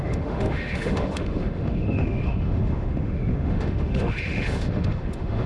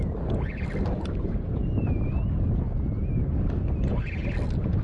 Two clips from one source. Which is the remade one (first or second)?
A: first